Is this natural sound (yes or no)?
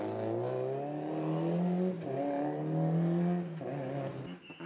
yes